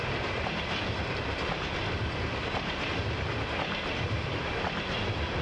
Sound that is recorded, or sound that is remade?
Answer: recorded